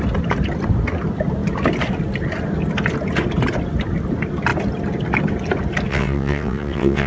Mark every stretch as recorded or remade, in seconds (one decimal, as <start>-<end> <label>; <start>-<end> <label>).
0.0-5.9 recorded; 5.9-7.1 remade